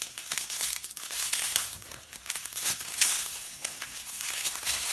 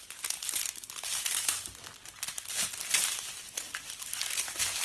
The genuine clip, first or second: second